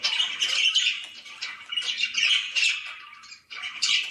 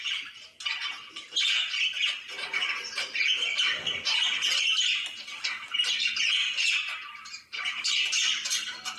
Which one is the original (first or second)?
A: second